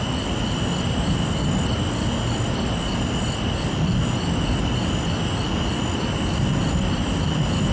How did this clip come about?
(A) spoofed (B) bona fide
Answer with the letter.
B